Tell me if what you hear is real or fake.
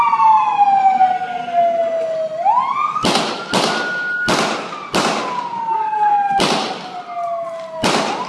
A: real